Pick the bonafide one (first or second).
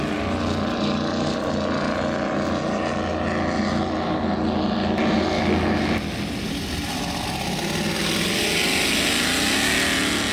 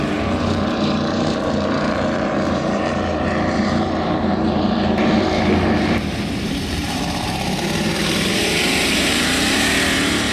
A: first